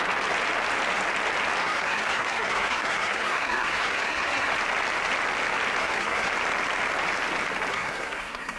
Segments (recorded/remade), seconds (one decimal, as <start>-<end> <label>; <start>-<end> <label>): 0.0-1.6 recorded; 1.6-4.5 remade; 4.5-5.8 recorded; 5.8-6.3 remade; 6.3-7.7 recorded; 7.7-8.6 remade